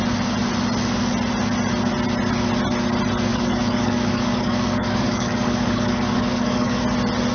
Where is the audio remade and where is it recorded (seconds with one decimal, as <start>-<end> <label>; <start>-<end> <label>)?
0.0-3.3 recorded; 3.3-6.8 remade; 6.8-7.3 recorded